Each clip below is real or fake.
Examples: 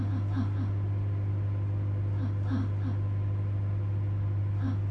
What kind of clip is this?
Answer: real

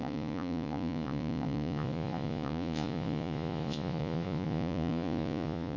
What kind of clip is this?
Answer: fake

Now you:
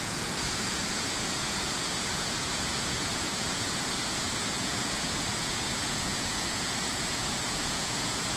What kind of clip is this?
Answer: fake